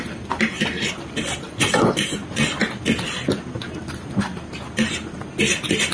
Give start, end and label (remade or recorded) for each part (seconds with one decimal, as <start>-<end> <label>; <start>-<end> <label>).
0.0-2.2 remade; 2.2-5.5 recorded; 5.5-5.9 remade